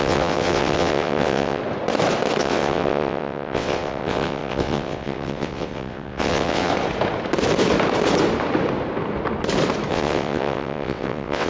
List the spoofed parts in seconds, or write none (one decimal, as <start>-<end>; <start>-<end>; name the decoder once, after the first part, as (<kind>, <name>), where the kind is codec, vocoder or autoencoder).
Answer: 0.0-1.6 (vocoder, WaveNeXt); 2.4-6.7; 9.9-11.5

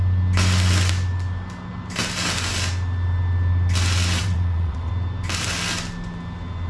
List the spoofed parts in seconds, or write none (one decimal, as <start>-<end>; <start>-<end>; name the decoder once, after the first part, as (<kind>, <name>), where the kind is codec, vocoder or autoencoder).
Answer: 4.2-4.9 (vocoder, WaveNeXt)